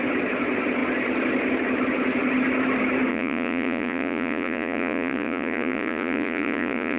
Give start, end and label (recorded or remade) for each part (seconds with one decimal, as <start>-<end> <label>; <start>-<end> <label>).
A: 0.0-3.1 recorded; 3.1-7.0 remade